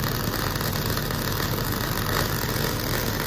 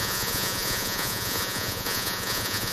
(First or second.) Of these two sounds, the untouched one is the first